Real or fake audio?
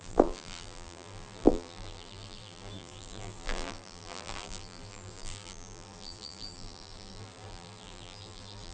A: fake